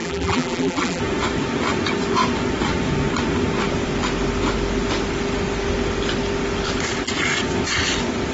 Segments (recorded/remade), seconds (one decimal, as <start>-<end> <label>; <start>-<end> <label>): 0.0-1.0 remade; 1.0-8.3 recorded